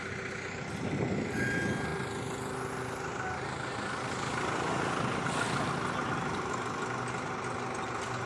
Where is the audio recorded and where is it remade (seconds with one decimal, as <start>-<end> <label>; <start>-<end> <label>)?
0.0-8.3 recorded